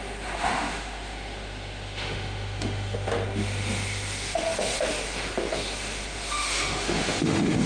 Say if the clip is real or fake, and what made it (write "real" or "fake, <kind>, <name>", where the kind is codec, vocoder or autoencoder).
fake, autoencoder, DAC-VAE